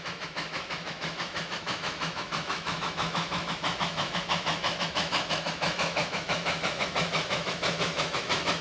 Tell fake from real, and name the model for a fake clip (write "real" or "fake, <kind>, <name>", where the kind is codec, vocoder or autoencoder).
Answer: fake, autoencoder, DAC-VAE